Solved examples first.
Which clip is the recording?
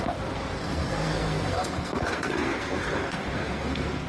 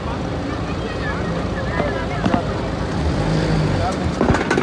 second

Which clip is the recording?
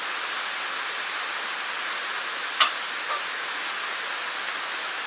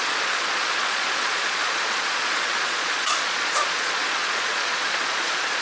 first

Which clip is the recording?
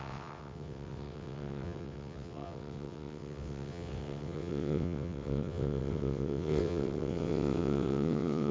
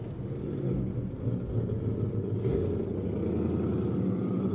second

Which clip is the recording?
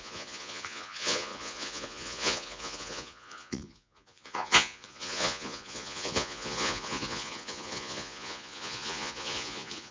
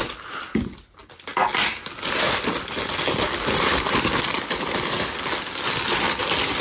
second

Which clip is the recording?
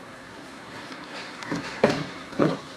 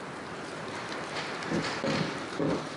second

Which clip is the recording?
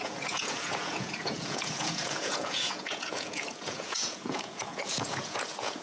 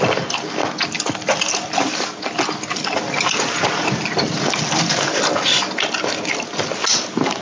second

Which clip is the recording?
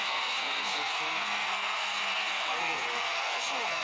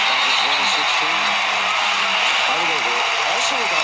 second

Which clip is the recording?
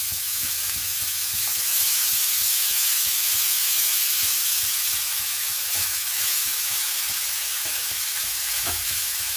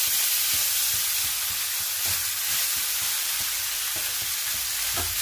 second